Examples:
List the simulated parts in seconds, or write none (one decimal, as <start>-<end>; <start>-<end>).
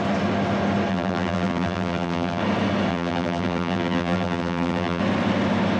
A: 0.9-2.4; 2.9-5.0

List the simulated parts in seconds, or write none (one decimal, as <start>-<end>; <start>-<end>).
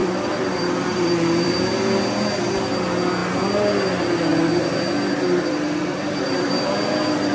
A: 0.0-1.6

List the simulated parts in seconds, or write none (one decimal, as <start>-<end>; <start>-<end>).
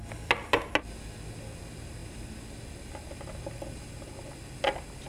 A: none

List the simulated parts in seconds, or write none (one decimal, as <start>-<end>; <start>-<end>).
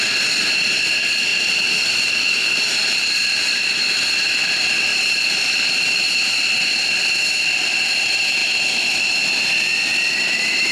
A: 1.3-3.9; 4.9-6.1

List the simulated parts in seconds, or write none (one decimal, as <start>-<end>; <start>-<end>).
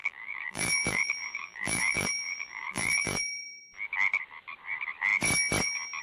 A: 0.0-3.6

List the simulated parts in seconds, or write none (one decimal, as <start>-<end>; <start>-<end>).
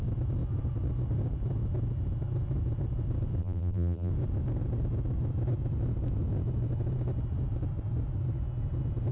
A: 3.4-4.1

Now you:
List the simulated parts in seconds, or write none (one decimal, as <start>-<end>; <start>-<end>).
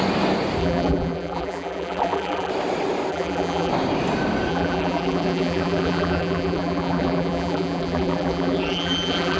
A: 0.6-2.5; 3.1-3.7; 4.5-9.4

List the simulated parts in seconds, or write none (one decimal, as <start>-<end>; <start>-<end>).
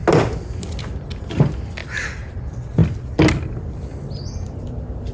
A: none